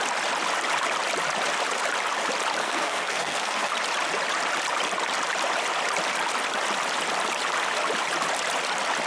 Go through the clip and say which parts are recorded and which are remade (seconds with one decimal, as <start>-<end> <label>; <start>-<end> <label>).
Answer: 0.0-2.6 recorded; 2.6-3.7 remade; 3.7-9.1 recorded